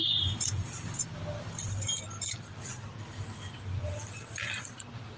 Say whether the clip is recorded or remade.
recorded